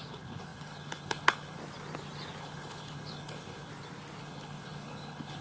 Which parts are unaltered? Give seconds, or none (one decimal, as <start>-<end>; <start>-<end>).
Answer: 1.6-2.4; 3.7-4.2